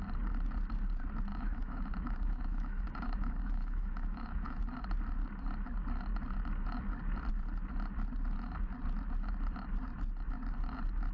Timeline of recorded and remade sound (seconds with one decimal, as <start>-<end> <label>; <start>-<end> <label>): 0.0-1.3 recorded; 1.3-4.6 remade; 4.6-11.1 recorded